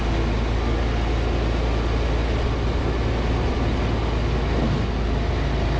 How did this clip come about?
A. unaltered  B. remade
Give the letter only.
A